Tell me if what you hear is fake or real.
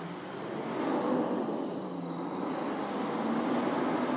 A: real